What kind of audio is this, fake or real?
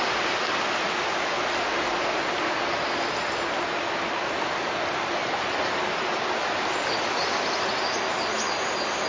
real